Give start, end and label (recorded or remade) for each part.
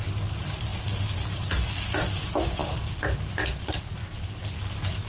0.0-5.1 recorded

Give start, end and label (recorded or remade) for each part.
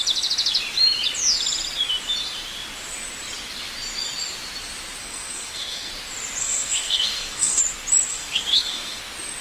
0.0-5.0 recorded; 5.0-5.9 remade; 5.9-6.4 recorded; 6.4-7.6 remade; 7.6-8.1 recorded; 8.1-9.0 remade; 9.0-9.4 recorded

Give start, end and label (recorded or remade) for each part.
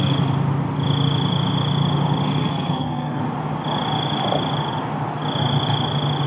0.0-2.4 recorded; 2.4-3.2 remade; 3.2-6.3 recorded